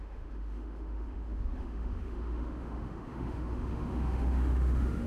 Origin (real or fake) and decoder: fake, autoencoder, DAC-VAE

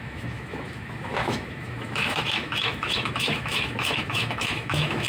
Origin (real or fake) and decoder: fake, autoencoder, DAC-VAE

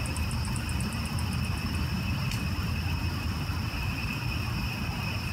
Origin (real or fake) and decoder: real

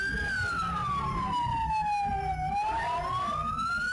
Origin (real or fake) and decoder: real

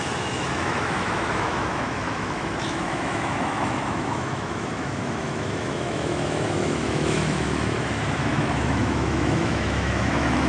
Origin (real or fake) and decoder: fake, autoencoder, DAC-VAE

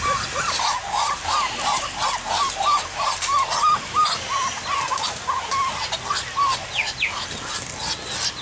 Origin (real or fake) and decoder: real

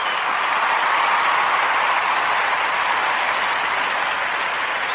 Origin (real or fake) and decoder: real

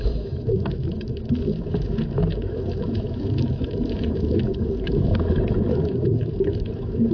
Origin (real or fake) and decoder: fake, autoencoder, DAC-VAE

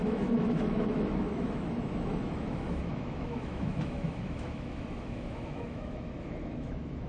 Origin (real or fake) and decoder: fake, autoencoder, DAC-VAE